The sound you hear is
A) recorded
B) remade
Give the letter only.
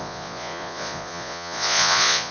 B